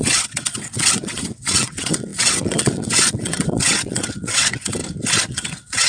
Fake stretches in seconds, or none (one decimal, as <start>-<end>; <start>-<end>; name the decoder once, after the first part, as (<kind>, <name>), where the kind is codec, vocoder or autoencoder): 0.0-4.8 (vocoder, WaveNeXt); 5.3-5.9